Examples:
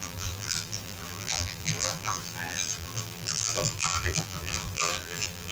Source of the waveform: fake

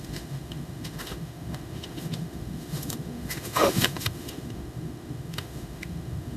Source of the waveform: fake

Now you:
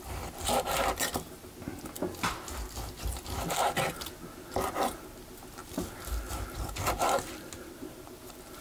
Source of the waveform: real